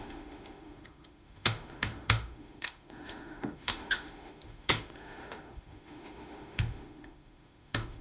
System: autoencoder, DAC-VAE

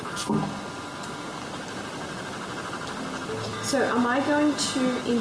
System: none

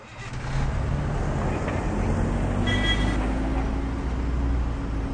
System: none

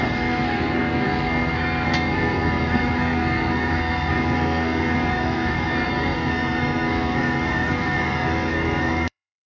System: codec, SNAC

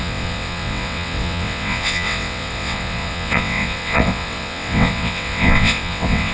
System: vocoder, WaveNeXt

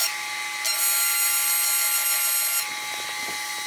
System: none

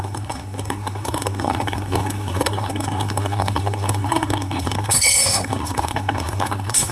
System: codec, SNAC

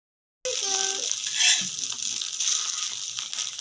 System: none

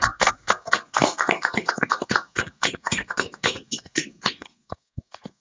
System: codec, SNAC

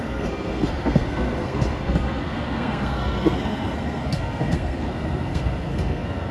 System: codec, SNAC